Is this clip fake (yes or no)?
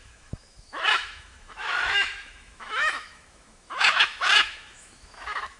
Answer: yes